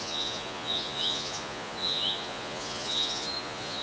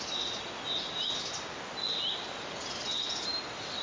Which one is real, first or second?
second